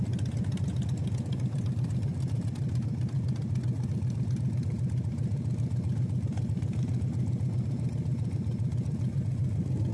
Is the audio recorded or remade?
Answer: recorded